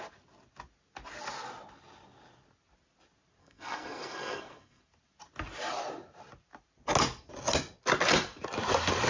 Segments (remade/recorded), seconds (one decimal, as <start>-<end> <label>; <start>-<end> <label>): 0.0-3.4 recorded; 3.4-4.8 remade; 4.8-9.1 recorded